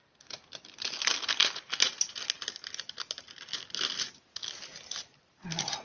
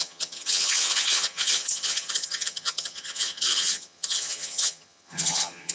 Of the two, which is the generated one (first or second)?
second